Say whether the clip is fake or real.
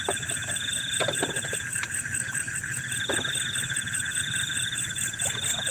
real